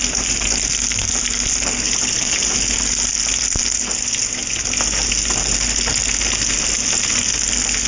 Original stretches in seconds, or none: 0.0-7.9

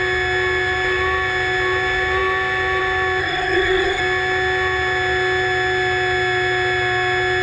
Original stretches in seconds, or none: 0.0-3.2; 4.0-7.4

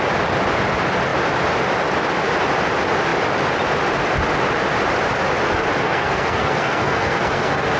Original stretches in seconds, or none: 0.0-5.8

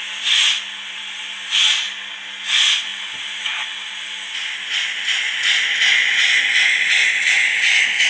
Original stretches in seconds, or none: 0.0-8.1